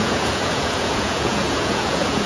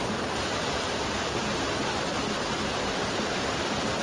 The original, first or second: second